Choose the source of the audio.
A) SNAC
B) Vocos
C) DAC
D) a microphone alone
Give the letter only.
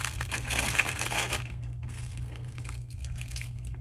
A